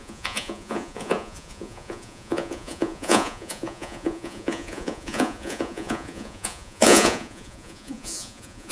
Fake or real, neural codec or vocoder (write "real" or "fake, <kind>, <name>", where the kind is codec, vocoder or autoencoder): fake, vocoder, Vocos